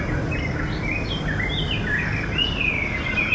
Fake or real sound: real